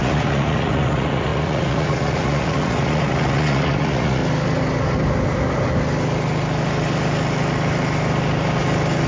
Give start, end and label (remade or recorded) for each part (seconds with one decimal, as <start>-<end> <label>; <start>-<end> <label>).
0.0-4.2 remade; 4.2-9.1 recorded